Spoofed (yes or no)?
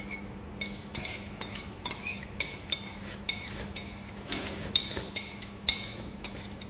yes